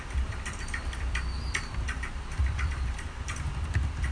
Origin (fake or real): fake